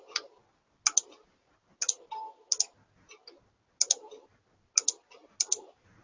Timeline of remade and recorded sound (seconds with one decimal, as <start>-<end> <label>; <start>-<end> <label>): 0.0-6.0 recorded